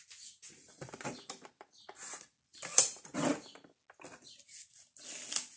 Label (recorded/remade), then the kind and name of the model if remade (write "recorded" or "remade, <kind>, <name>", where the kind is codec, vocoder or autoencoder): recorded